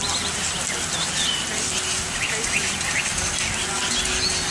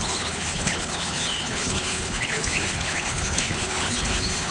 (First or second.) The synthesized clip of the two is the second